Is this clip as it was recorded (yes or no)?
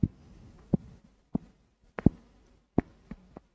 yes